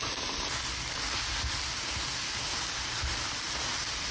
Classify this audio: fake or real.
real